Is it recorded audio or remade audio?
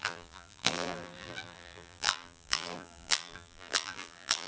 remade